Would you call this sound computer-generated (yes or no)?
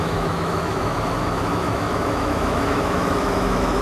yes